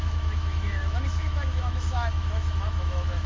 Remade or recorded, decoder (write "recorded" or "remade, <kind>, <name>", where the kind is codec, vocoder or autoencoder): remade, autoencoder, DAC-VAE